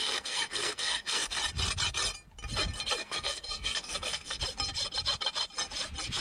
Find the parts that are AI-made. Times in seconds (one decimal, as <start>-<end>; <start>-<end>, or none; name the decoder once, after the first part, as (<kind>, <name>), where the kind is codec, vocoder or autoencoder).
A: 0.0-1.4 (codec, SNAC); 3.0-4.4